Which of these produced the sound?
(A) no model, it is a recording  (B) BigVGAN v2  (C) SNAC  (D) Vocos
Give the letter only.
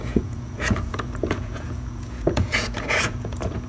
D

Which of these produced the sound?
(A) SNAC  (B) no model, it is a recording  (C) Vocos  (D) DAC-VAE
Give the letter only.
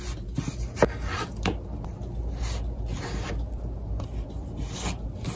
B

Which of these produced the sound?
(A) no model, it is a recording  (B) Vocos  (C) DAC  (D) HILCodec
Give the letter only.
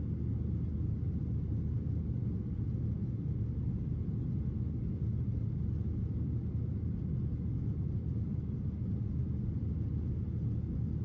A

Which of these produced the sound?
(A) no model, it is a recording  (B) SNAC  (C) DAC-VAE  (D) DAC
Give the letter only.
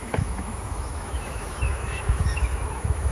C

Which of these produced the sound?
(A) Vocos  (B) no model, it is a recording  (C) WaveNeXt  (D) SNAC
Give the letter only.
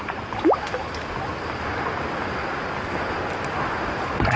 B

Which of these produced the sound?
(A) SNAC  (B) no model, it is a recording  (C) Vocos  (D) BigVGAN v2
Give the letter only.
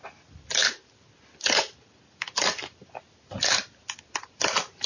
D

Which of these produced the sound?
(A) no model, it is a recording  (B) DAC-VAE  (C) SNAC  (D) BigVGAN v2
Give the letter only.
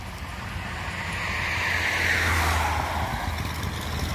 A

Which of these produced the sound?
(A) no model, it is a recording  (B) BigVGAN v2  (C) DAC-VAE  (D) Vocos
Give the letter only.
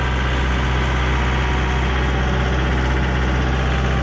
A